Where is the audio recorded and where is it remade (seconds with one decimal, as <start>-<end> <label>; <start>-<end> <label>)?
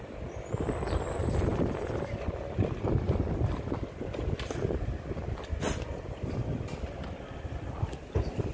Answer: 0.0-8.5 recorded